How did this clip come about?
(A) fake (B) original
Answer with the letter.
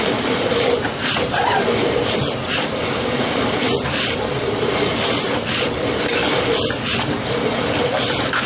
A